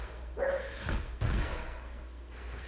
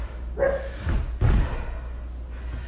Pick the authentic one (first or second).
second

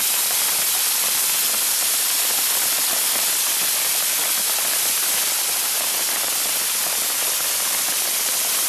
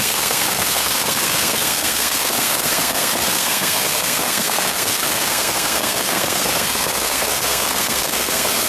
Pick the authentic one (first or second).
first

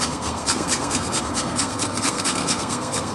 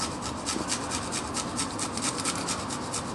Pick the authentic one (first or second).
second